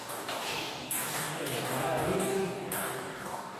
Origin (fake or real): fake